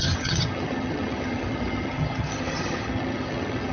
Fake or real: fake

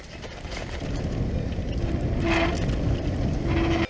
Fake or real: real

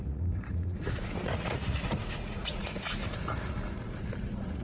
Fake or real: fake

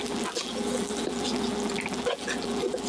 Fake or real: fake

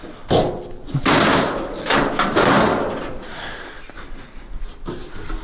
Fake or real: real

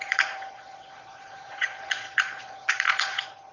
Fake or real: fake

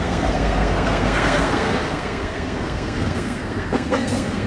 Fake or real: fake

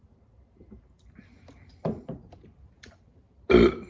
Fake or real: real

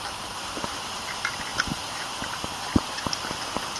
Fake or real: real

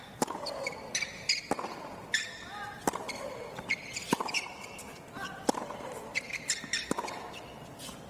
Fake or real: real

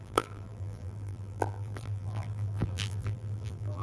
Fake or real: fake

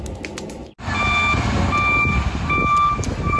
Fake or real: real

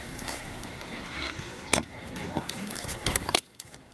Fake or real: fake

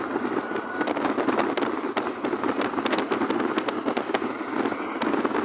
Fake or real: real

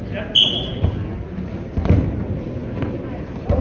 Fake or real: real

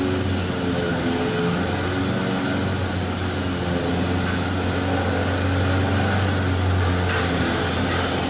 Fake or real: real